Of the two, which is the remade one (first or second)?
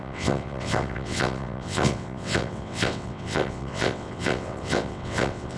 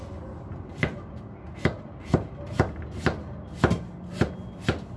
first